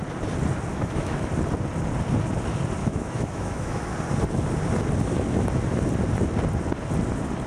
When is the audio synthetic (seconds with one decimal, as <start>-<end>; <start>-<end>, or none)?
0.7-1.3; 2.8-3.9